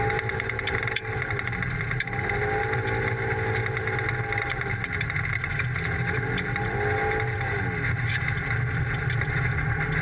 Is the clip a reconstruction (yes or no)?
no